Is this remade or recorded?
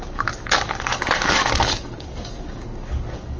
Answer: remade